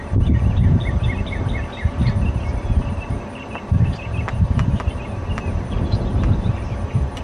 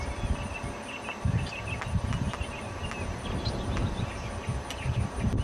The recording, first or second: second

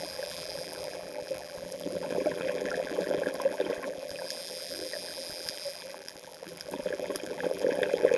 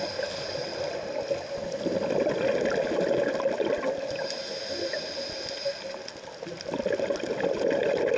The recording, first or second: second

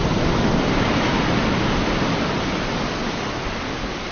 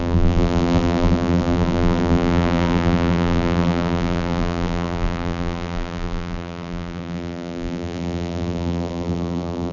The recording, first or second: first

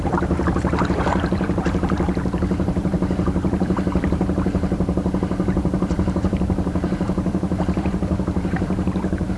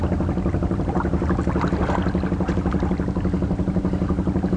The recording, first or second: second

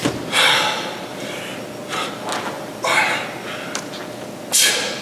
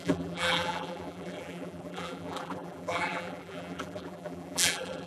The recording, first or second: first